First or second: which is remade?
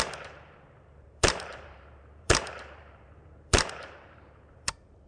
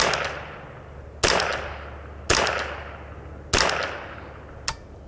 first